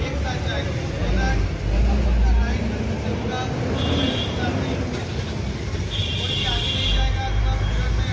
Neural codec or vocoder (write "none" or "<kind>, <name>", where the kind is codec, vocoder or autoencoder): none